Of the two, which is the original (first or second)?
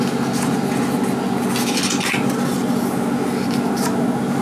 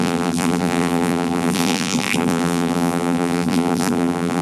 first